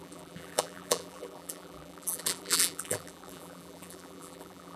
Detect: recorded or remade remade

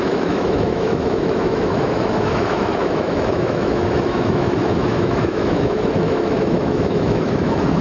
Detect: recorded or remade remade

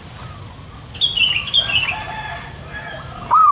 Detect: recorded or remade recorded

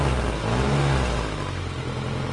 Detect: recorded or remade recorded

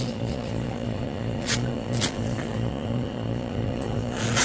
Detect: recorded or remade remade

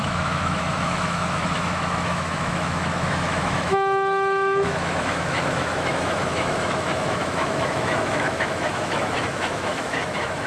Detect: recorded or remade remade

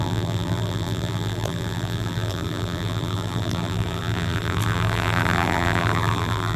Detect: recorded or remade remade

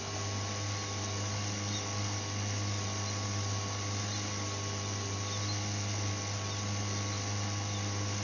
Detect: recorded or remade recorded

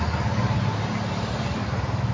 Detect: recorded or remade recorded